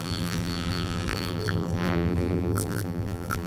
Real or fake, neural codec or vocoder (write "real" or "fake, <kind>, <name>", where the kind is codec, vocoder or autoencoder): fake, vocoder, BigVGAN v2